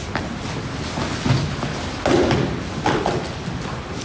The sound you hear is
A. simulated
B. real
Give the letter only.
B